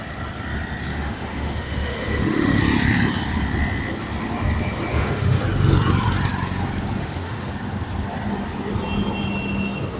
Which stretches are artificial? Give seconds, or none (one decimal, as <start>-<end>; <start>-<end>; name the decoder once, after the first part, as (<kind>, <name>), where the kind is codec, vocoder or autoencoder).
0.9-2.6 (autoencoder, DAC-VAE); 4.9-5.4; 7.0-7.5